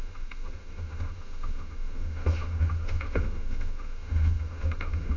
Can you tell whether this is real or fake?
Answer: fake